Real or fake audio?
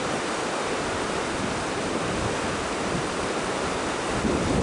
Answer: real